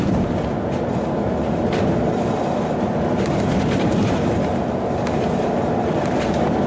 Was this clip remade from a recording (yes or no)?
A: no